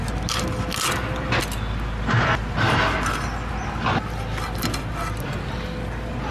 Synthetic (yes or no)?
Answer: no